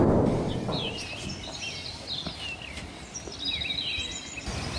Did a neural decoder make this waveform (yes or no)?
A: no